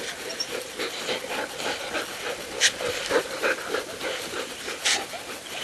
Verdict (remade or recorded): remade